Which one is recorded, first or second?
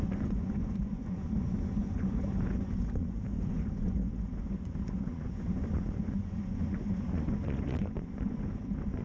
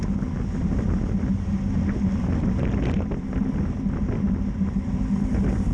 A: second